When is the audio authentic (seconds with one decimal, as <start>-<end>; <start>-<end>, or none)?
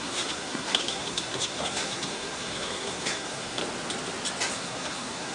3.6-4.5